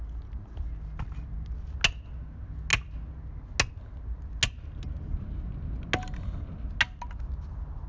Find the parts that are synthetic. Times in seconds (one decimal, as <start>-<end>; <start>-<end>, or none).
none